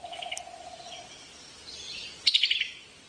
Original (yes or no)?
yes